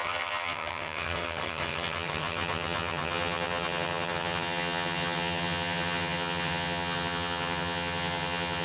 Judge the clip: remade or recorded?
remade